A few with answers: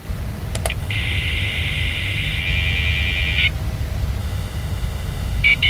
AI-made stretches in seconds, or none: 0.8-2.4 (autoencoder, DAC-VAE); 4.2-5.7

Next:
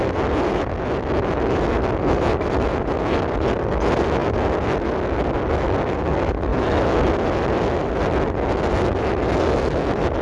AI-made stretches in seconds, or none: none